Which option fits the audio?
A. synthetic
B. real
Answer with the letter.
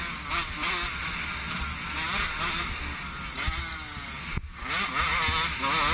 B